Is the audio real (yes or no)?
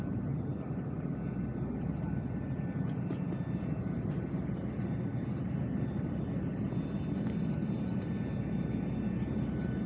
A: yes